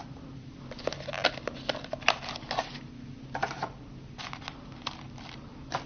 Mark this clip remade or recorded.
recorded